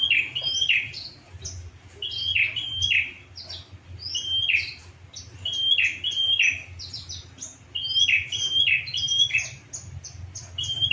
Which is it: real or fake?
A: real